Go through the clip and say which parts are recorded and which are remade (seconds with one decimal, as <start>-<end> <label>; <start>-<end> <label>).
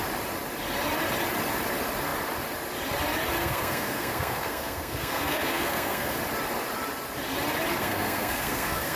0.0-3.4 recorded; 3.4-6.2 remade; 6.2-7.8 recorded; 7.8-9.0 remade